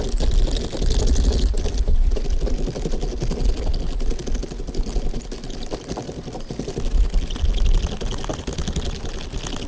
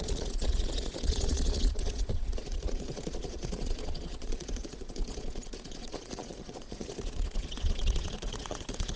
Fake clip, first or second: second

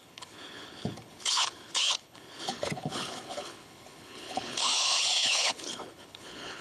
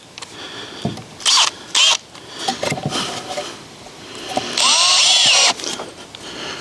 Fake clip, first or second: first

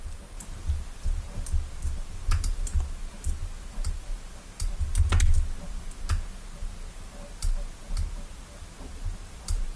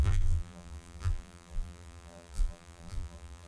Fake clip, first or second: second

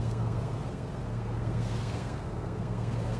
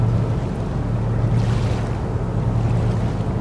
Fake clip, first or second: first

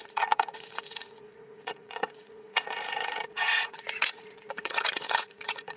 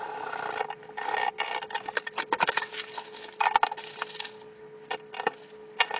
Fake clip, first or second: first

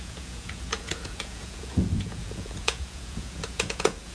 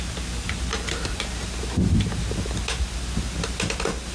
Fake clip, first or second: first